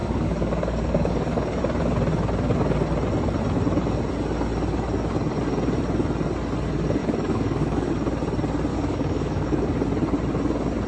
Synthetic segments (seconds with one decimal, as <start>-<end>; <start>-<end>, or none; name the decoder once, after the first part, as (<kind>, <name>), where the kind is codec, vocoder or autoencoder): 0.0-1.6 (codec, DAC); 7.0-7.9; 8.7-9.7